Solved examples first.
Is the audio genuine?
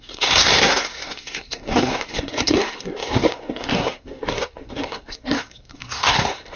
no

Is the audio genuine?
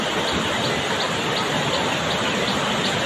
yes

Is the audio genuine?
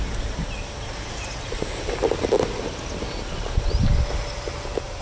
yes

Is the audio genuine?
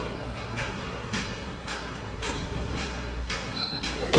no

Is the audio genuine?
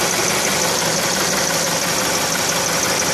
yes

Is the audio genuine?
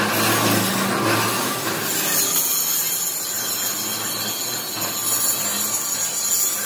yes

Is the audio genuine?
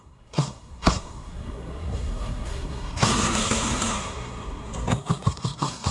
no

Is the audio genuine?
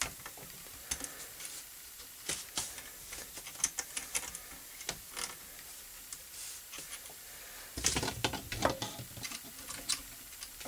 yes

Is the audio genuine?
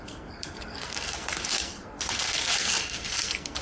no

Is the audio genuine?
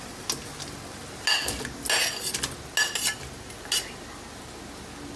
yes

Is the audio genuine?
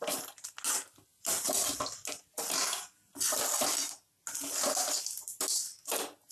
yes